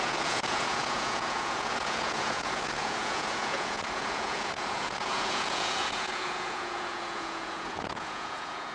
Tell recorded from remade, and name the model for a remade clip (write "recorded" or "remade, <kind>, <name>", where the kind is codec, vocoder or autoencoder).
remade, vocoder, Vocos